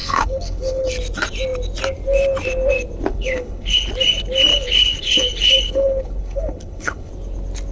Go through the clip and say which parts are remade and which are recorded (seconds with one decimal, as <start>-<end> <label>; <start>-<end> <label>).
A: 0.0-0.9 remade; 0.9-3.1 recorded; 3.1-3.9 remade; 3.9-4.5 recorded; 4.5-7.1 remade; 7.1-7.7 recorded